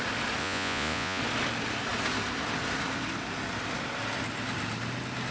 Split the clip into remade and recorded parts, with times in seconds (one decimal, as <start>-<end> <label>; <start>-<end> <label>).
0.0-0.4 recorded; 0.4-1.2 remade; 1.2-5.3 recorded